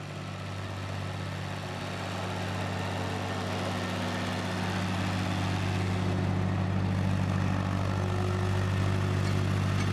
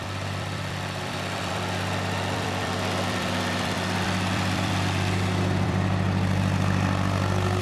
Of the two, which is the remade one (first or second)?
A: second